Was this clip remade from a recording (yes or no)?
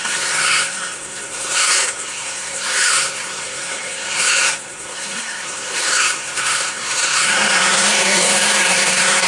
yes